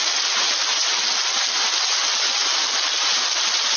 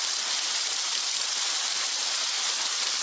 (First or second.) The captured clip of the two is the first